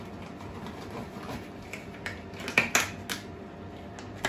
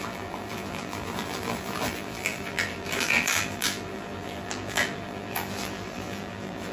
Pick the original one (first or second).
first